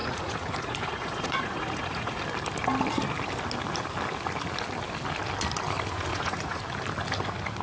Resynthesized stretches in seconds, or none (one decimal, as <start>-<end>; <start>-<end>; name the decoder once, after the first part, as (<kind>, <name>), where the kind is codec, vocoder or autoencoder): 0.0-2.2 (vocoder, Vocos); 6.1-6.6